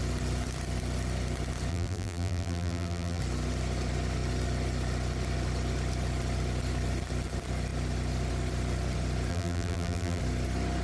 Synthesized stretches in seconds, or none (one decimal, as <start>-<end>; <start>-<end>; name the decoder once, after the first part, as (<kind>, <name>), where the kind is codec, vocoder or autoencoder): 1.7-3.2 (vocoder, BigVGAN v2); 9.3-10.2